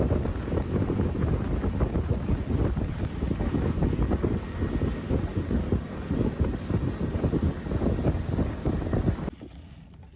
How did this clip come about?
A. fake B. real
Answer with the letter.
B